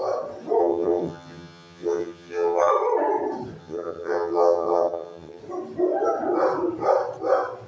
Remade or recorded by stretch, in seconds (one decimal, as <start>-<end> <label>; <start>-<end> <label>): 0.0-0.6 recorded; 0.6-2.7 remade; 2.7-3.6 recorded; 3.6-5.4 remade; 5.4-7.7 recorded